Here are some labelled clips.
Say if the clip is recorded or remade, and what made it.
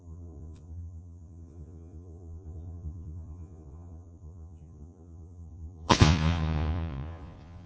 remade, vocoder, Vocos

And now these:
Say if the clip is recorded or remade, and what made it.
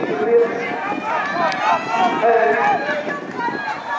recorded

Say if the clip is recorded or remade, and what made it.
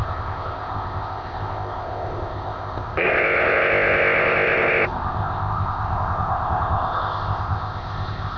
remade, codec, ZipCodec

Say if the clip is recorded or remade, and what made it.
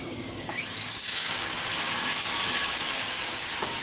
remade, codec, DAC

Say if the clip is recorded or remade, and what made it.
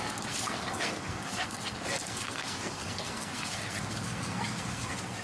remade, codec, SNAC